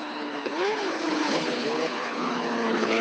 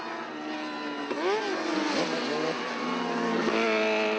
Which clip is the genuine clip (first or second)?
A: second